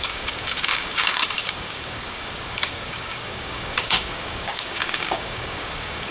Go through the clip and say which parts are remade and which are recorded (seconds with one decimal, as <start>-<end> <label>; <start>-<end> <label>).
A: 0.0-6.1 remade